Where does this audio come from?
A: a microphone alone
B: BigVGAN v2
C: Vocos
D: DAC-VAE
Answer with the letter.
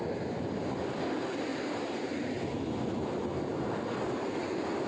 B